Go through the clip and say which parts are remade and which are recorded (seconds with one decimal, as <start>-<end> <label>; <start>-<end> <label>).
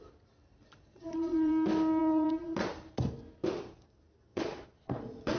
0.0-0.6 recorded; 0.6-1.5 remade; 1.5-2.0 recorded; 2.0-2.7 remade; 2.7-4.3 recorded; 4.3-5.4 remade